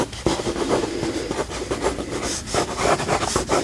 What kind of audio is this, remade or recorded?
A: remade